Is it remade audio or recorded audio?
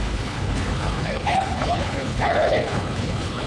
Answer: remade